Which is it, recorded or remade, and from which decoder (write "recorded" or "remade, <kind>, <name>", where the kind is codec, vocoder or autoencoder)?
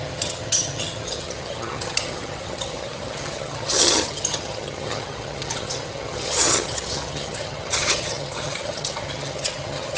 remade, vocoder, HiFi-GAN